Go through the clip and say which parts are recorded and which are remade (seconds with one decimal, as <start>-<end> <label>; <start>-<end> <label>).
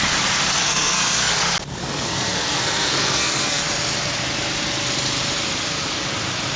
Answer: 0.0-0.6 recorded; 0.6-1.3 remade; 1.3-1.8 recorded; 1.8-3.6 remade; 3.6-6.6 recorded